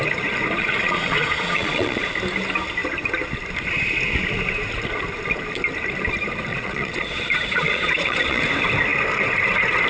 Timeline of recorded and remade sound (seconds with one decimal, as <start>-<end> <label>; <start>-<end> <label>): 0.0-0.6 recorded; 0.6-2.1 remade; 2.1-6.5 recorded; 6.5-8.4 remade; 8.4-9.9 recorded